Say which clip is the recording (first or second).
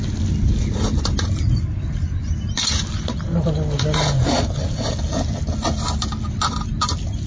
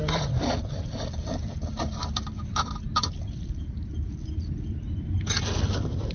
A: first